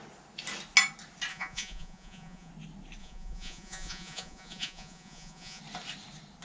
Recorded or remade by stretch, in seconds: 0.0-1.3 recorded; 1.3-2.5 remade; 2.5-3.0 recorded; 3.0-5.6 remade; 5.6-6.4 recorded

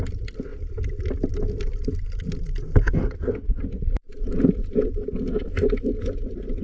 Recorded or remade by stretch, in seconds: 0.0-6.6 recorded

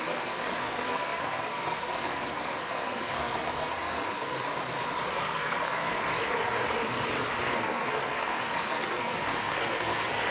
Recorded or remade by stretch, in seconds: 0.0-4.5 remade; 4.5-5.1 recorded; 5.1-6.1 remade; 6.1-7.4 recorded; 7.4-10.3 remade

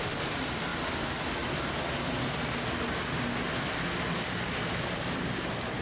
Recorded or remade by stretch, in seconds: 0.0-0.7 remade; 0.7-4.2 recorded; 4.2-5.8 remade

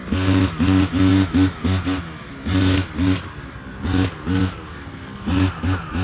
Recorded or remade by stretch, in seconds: 0.0-6.0 recorded